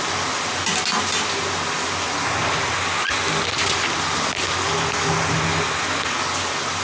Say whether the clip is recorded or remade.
recorded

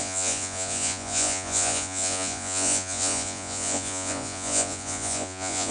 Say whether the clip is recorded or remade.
remade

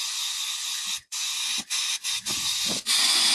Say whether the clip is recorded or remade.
remade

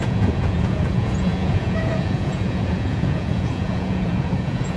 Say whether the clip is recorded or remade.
remade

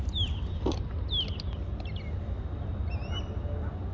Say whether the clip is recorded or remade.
recorded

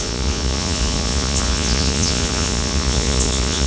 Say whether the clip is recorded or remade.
remade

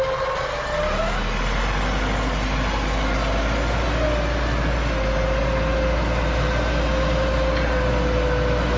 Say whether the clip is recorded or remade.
recorded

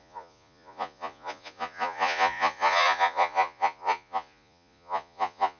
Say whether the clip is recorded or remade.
remade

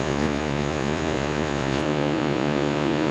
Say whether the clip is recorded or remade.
remade